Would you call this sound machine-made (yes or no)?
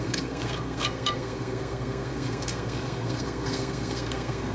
yes